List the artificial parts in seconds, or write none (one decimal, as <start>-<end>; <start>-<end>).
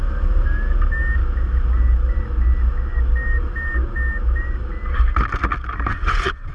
5.9-6.5